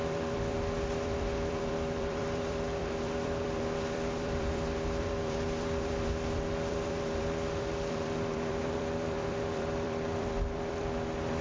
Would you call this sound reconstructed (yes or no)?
yes